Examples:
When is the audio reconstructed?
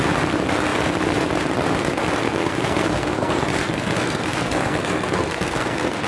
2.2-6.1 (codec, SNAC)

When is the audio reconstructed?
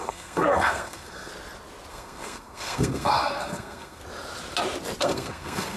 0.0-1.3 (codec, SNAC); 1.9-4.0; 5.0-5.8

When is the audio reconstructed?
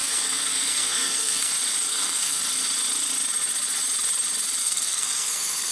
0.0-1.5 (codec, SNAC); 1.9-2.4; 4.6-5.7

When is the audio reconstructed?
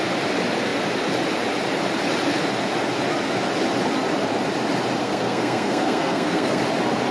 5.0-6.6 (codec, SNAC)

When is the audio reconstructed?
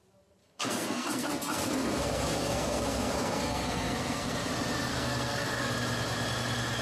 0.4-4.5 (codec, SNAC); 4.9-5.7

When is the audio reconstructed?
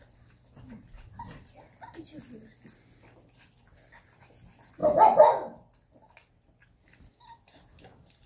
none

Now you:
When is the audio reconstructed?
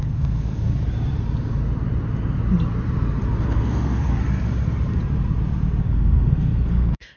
0.0-0.7 (codec, SNAC); 3.4-4.1; 5.8-7.2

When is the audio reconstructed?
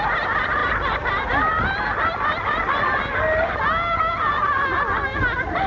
none